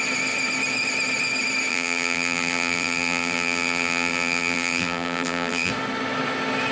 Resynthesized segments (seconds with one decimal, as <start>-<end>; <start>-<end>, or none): 1.7-5.7